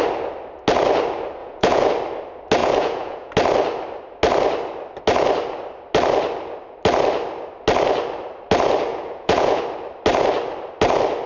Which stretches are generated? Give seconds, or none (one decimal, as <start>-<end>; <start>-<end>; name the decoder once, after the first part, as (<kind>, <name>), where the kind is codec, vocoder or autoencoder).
1.4-1.9 (vocoder, Vocos); 2.6-3.3; 8.9-9.6